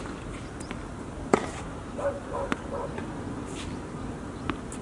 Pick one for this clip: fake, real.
real